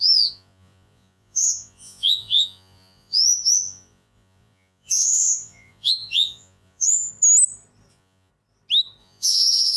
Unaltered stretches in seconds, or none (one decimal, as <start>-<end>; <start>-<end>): 7.1-7.9; 8.3-9.0